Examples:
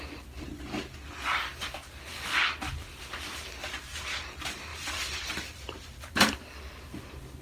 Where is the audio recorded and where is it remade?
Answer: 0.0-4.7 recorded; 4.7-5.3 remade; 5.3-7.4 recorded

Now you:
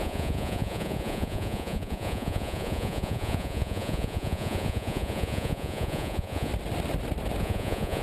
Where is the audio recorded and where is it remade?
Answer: 0.0-6.5 remade; 6.5-7.4 recorded; 7.4-8.0 remade

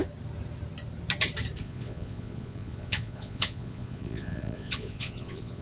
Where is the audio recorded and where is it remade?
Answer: 0.0-1.6 recorded; 1.6-5.6 remade

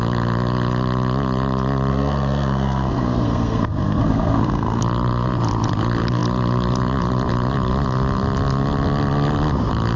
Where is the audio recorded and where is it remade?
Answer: 0.0-1.9 recorded; 1.9-4.8 remade; 4.8-10.0 recorded